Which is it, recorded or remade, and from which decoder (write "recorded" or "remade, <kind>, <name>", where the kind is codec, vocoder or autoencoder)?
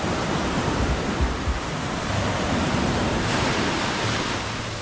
remade, vocoder, BigVGAN v2